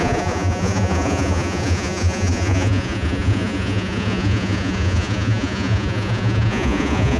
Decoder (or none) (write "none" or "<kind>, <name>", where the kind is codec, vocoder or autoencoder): vocoder, Vocos